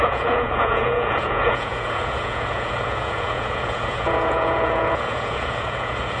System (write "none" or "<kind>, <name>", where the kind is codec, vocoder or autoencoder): vocoder, Vocos